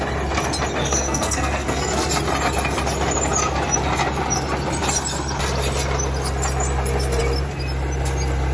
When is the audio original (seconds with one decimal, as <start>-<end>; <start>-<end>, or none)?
0.0-0.8; 2.1-8.5